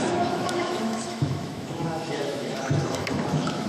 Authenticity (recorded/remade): remade